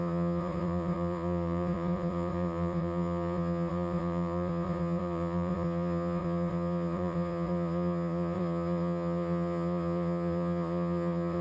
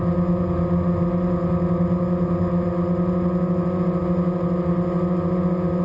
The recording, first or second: second